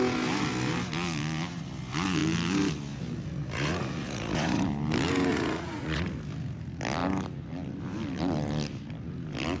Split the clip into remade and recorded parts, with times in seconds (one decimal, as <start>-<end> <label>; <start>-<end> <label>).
0.0-3.4 recorded; 3.4-4.6 remade; 4.6-5.3 recorded; 5.3-6.1 remade; 6.1-9.6 recorded

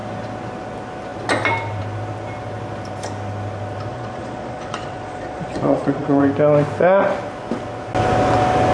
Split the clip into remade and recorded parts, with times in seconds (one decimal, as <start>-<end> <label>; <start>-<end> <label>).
0.0-3.9 recorded; 3.9-6.2 remade; 6.2-8.7 recorded

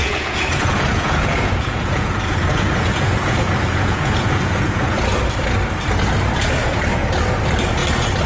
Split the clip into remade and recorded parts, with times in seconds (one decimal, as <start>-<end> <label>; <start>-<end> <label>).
0.0-5.0 remade; 5.0-8.3 recorded

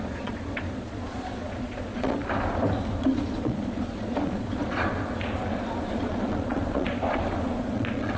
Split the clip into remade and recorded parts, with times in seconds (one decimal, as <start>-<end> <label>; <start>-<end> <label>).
0.0-2.2 remade; 2.2-3.0 recorded; 3.0-8.2 remade

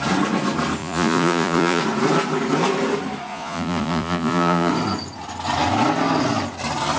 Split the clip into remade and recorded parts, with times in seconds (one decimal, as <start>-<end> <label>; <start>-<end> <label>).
0.0-0.8 recorded; 0.8-1.8 remade; 1.8-3.3 recorded; 3.3-4.7 remade; 4.7-7.0 recorded